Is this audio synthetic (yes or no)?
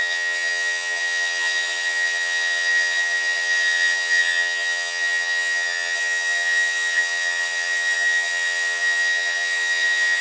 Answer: yes